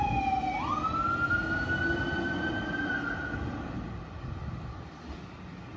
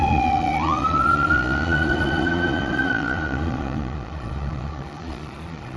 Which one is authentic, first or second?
first